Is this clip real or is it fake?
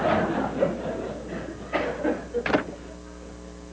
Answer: real